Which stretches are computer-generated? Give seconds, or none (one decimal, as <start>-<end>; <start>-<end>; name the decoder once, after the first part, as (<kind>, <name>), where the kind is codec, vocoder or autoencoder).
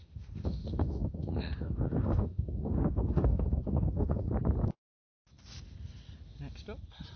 0.0-4.3 (autoencoder, DAC-VAE)